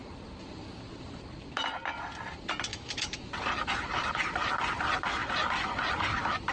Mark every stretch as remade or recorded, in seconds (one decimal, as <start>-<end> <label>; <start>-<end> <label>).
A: 0.0-2.7 recorded; 2.7-3.3 remade; 3.3-6.5 recorded